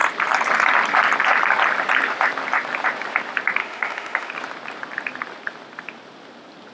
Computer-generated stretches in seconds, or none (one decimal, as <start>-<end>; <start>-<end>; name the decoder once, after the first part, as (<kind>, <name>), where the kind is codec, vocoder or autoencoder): 3.6-4.3 (autoencoder, DAC-VAE)